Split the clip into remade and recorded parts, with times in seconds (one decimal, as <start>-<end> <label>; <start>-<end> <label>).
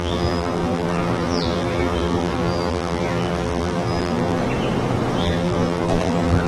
0.0-4.4 remade; 4.4-5.2 recorded; 5.2-6.5 remade